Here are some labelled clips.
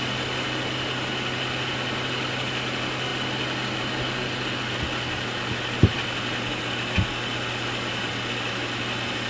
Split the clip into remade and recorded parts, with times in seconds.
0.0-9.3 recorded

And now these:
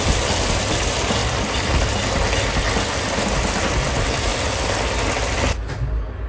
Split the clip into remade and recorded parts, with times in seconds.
0.0-1.2 remade; 1.2-3.3 recorded; 3.3-4.3 remade; 4.3-6.3 recorded

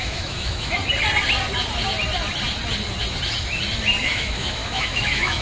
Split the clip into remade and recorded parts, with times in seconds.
0.0-0.8 remade; 0.8-4.0 recorded; 4.0-5.4 remade